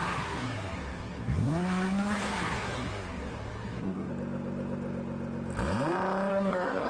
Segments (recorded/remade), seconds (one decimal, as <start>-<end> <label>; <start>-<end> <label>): 0.0-4.1 remade; 4.1-6.3 recorded; 6.3-6.9 remade